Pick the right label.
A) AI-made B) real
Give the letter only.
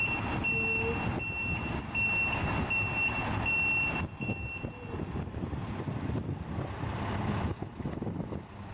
B